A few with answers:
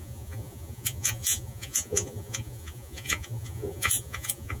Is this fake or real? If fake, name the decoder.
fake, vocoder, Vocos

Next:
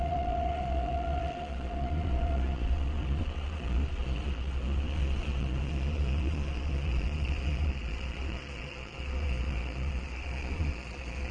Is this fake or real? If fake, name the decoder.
fake, vocoder, Vocos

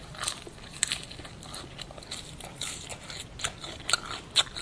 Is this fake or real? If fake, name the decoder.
real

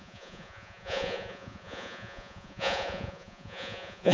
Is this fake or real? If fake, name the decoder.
fake, vocoder, Vocos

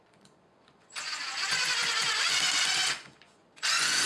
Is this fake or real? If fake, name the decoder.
fake, vocoder, Vocos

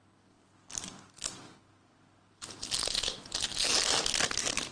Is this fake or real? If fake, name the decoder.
real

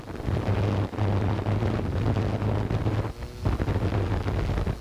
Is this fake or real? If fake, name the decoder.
real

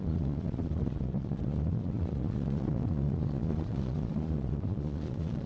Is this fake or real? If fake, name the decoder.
fake, vocoder, Vocos